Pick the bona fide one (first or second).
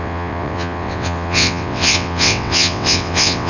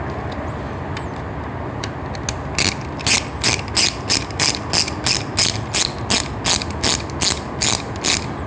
second